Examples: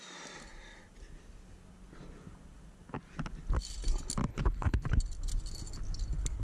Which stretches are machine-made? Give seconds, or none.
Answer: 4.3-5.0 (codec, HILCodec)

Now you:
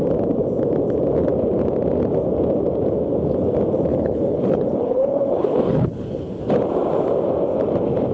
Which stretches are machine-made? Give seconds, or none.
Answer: 3.9-6.4 (codec, HILCodec)

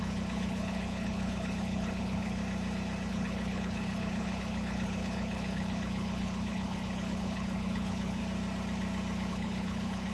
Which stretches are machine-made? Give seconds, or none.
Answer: 0.0-2.4 (codec, HILCodec); 3.1-8.2; 9.3-10.1

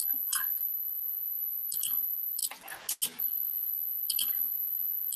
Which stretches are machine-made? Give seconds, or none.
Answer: 0.0-2.4 (codec, HILCodec); 3.2-5.2